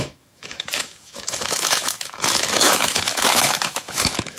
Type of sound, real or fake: fake